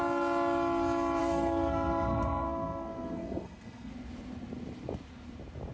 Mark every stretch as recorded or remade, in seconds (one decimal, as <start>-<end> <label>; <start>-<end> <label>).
0.0-1.2 recorded; 1.2-3.9 remade; 3.9-5.7 recorded